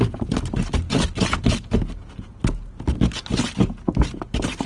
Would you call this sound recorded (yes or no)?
yes